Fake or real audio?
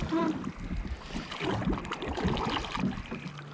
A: real